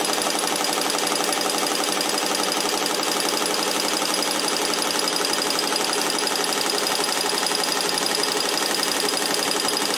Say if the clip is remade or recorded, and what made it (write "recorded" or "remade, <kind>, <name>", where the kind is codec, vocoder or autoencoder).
recorded